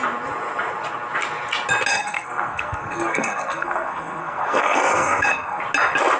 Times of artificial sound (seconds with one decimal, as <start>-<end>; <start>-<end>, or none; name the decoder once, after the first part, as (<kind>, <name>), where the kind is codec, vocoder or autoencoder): 1.9-5.6 (codec, SNAC)